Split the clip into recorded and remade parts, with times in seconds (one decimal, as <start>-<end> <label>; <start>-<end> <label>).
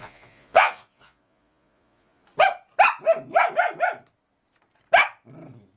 0.0-2.2 remade; 2.2-5.8 recorded